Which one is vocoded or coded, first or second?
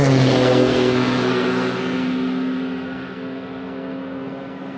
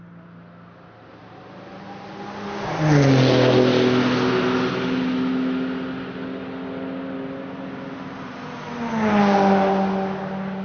first